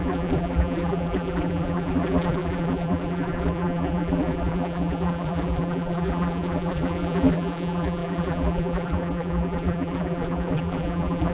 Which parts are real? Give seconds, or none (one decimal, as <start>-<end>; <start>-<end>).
none